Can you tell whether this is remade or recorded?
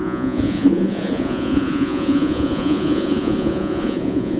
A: remade